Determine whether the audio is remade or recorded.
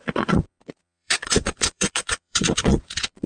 remade